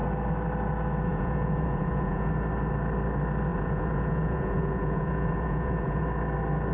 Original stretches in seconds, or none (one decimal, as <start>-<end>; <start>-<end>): 0.0-1.1; 2.3-3.5; 6.0-6.7